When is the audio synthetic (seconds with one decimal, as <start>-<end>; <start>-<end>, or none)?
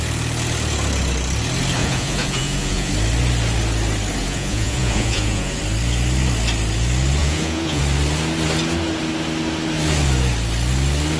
1.8-2.9; 4.2-5.6; 7.2-7.8